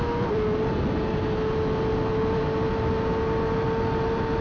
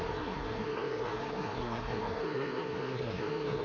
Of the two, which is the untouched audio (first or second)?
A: first